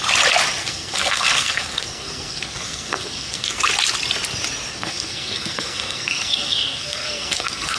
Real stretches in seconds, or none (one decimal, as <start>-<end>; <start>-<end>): 0.0-0.6; 3.7-4.7